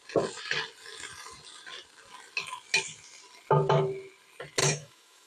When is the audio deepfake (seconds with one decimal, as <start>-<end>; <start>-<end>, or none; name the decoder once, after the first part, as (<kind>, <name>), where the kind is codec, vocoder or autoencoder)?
4.6-5.3 (autoencoder, DAC-VAE)

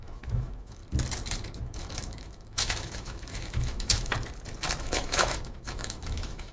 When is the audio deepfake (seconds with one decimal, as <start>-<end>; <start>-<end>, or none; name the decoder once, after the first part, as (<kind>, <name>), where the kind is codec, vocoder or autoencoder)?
0.0-0.8 (autoencoder, DAC-VAE); 1.6-4.1; 4.8-6.5

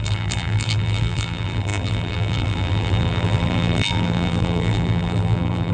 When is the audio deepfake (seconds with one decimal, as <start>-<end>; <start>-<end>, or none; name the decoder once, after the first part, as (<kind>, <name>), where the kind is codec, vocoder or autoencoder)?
0.0-5.7 (vocoder, BigVGAN v2)

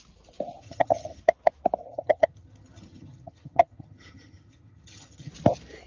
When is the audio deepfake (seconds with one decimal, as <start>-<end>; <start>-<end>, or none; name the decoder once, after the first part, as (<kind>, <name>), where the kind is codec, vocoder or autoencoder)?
0.6-1.2 (vocoder, HiFi-GAN); 1.8-5.3

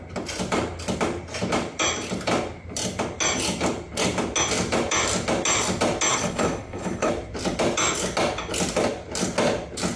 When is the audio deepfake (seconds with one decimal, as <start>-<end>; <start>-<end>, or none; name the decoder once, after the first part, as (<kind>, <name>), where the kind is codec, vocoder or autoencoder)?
6.1-7.1 (codec, HILCodec)

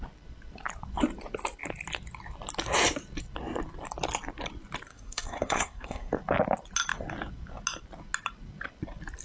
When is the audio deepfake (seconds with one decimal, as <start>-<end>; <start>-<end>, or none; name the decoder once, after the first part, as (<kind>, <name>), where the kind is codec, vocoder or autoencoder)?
4.9-6.1 (codec, SNAC)